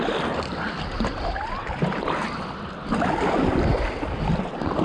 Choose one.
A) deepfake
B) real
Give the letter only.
B